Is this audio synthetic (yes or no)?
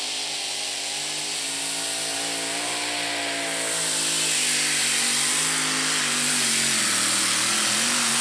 no